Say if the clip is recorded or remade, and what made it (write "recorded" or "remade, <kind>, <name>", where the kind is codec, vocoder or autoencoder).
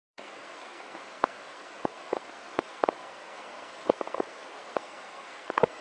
remade, codec, SNAC